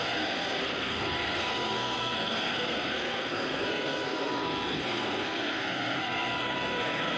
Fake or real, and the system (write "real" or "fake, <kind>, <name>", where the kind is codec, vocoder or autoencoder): fake, codec, SNAC